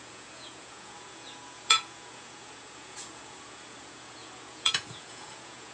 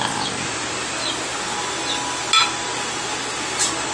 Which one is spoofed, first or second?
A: first